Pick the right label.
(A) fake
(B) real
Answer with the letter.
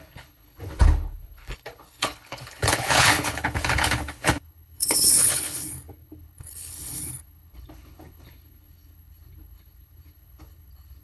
A